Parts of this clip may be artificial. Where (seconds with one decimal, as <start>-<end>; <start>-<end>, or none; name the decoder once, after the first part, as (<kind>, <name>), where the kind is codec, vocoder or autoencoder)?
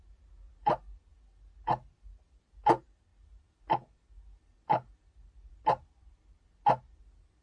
none